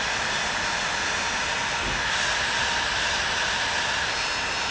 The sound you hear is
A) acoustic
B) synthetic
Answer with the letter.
A